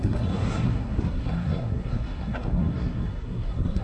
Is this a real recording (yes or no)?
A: no